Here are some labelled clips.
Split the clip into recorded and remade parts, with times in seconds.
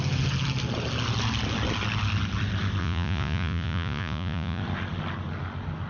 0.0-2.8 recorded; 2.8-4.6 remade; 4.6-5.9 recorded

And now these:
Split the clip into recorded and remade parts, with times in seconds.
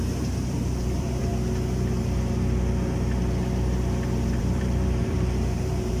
0.0-1.3 remade; 1.3-4.4 recorded; 4.4-6.0 remade